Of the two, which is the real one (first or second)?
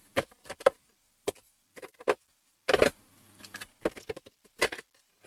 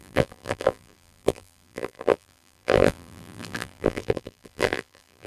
first